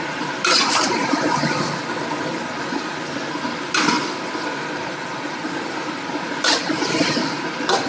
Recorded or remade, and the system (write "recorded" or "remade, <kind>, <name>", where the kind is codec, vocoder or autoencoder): recorded